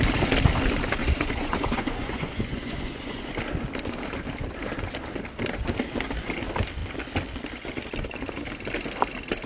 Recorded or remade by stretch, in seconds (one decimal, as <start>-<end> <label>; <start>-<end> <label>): 0.0-1.0 recorded; 1.0-3.3 remade; 3.3-9.5 recorded